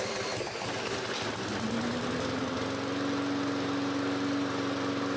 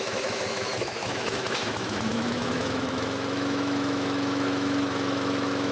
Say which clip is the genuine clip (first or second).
first